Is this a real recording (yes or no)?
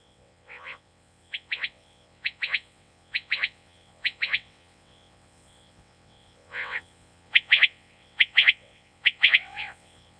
no